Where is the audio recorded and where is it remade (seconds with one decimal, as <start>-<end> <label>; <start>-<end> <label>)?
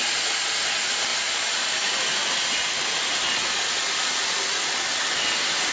0.0-1.1 recorded; 1.1-1.9 remade; 1.9-5.7 recorded